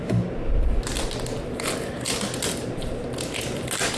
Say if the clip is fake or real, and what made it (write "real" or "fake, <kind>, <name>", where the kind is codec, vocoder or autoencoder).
real